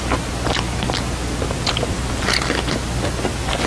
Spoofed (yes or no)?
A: no